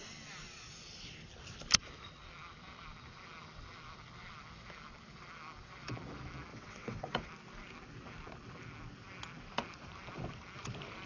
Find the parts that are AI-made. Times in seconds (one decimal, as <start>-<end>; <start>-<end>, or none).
6.5-7.3